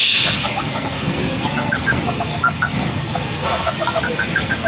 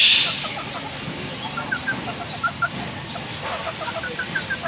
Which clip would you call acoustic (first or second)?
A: second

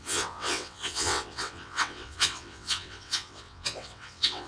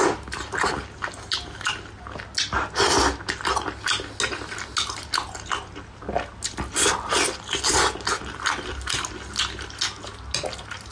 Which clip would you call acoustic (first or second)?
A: second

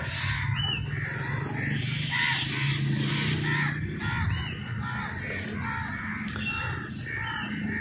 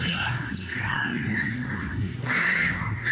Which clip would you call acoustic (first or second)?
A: first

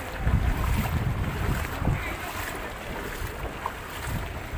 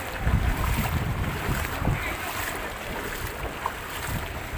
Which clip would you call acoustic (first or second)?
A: first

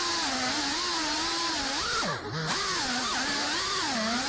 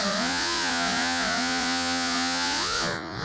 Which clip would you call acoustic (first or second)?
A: first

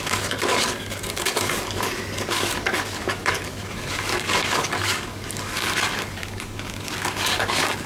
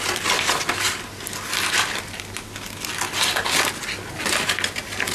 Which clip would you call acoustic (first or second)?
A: second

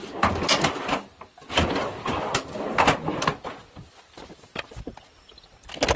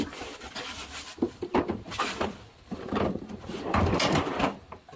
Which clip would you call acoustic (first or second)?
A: first